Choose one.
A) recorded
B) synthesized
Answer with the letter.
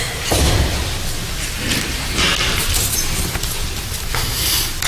A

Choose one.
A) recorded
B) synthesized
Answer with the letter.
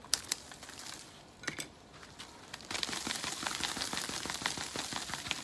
A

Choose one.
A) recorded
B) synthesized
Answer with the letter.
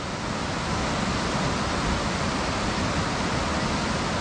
A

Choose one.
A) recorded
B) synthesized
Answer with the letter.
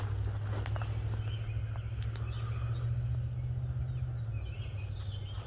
A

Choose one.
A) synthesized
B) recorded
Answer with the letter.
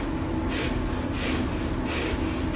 B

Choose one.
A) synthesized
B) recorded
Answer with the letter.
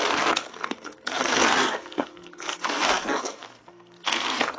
A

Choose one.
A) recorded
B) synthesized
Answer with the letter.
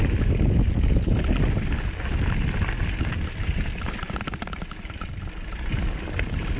A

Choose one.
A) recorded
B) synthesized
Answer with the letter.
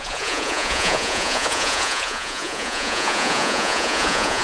B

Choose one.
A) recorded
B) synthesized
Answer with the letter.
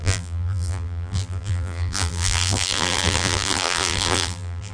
B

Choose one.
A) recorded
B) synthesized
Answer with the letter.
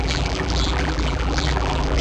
B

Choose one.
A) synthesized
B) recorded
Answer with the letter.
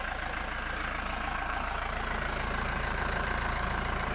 A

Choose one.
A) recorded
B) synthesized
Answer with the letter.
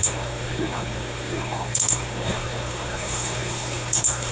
B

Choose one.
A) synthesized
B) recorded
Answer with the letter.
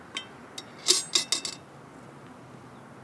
B